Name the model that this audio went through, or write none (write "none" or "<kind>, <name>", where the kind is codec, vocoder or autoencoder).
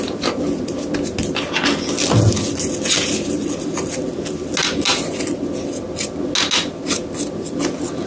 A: none